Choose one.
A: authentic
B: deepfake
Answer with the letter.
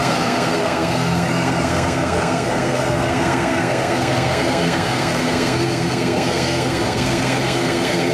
B